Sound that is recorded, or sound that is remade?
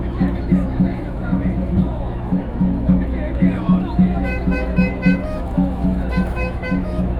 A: remade